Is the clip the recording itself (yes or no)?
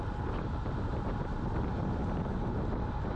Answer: yes